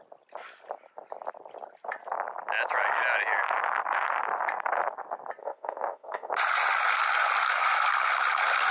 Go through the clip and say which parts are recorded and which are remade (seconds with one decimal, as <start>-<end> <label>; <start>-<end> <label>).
0.0-5.4 recorded; 5.4-6.3 remade; 6.3-8.7 recorded